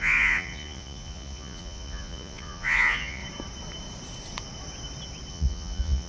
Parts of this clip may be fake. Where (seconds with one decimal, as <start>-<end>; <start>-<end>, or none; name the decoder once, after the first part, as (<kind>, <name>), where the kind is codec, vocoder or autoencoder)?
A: 0.0-3.2 (vocoder, Vocos); 5.3-6.1